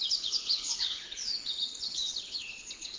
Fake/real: fake